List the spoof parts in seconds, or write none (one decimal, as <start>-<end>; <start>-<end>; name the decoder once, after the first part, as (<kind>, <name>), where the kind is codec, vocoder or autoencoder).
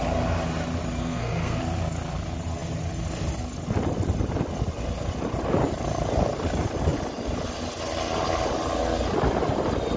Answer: 1.0-1.6 (codec, SNAC)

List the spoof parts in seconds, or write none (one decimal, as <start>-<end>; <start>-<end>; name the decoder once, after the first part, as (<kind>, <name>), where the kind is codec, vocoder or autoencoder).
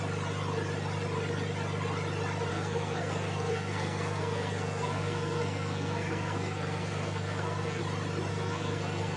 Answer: 2.5-7.8 (codec, SNAC); 8.3-9.2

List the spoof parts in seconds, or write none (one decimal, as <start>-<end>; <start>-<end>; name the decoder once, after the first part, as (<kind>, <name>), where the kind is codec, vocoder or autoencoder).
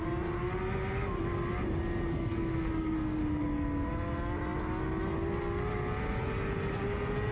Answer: 2.1-3.2 (codec, SNAC)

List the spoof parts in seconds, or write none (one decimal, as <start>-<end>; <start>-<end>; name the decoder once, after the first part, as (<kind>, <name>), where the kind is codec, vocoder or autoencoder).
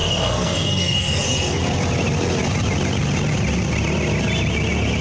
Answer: 0.0-1.6 (codec, SNAC)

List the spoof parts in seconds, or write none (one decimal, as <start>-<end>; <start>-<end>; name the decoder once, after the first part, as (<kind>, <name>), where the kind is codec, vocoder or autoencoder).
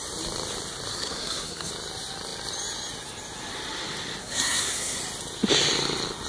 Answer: 0.9-1.7 (codec, SNAC); 4.2-5.0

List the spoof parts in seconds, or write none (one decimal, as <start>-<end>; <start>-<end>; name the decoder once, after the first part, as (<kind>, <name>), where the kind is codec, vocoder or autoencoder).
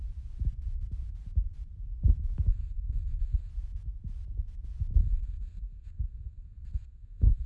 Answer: 2.5-3.5 (codec, SNAC); 5.0-7.5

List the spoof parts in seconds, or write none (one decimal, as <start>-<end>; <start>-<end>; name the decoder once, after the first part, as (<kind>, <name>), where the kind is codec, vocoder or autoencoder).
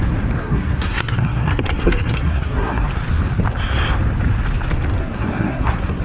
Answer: 0.4-2.9 (codec, SNAC); 5.0-6.0